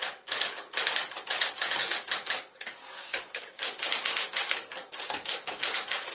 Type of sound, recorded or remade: remade